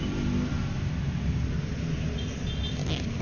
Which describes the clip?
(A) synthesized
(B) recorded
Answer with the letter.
B